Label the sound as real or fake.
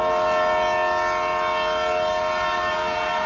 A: real